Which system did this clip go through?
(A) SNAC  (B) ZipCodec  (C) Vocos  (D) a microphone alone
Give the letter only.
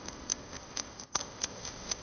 B